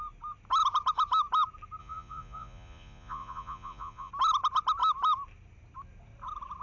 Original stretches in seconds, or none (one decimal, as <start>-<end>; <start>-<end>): 0.0-1.8; 4.1-6.6